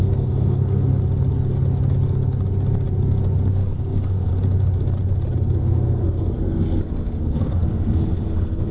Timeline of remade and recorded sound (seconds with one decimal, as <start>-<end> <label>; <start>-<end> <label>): 0.0-1.0 remade; 1.0-3.5 recorded; 3.5-4.3 remade; 4.3-5.6 recorded; 5.6-8.7 remade